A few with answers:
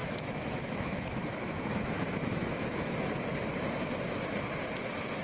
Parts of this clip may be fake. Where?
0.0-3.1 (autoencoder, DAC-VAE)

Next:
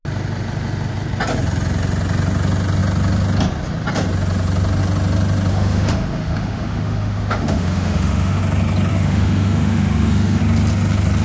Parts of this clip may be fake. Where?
5.5-8.4 (autoencoder, DAC-VAE); 8.9-10.4

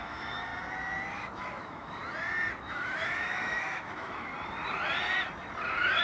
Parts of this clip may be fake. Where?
0.0-0.5 (autoencoder, DAC-VAE); 1.1-2.0; 2.6-4.3

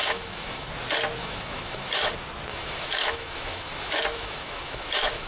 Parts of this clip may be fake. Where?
0.0-0.7 (autoencoder, DAC-VAE); 1.2-2.1; 2.5-5.3

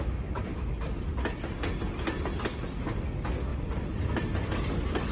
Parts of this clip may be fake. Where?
0.5-1.1 (autoencoder, DAC-VAE)

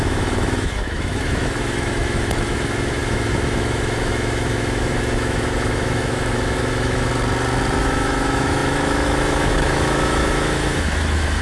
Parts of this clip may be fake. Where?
0.0-7.1 (autoencoder, DAC-VAE); 7.8-11.4

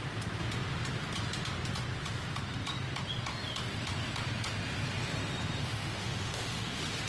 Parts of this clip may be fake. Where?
5.6-7.1 (autoencoder, DAC-VAE)